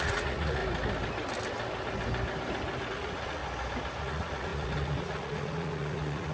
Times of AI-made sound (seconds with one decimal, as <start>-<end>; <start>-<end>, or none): 0.0-0.6; 2.9-3.4; 4.0-6.3